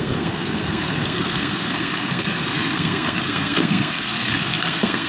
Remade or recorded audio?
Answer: remade